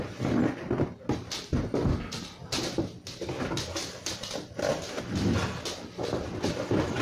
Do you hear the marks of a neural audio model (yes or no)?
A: no